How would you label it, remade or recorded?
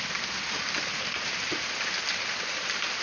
recorded